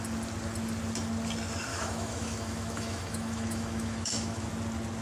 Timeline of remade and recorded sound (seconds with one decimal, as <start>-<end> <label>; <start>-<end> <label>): 0.0-1.7 recorded; 1.7-4.5 remade; 4.5-5.0 recorded